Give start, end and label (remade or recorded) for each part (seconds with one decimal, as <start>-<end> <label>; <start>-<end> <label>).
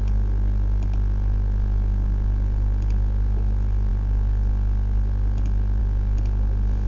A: 0.0-6.9 recorded